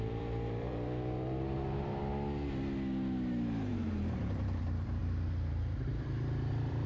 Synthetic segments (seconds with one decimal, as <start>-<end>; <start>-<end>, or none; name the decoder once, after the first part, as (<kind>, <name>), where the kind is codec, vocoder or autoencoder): 0.0-2.0 (vocoder, BigVGAN v2); 3.7-6.9